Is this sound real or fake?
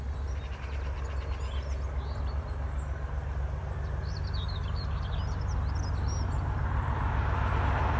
real